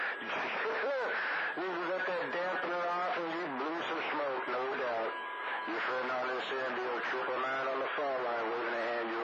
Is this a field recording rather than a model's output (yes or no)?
yes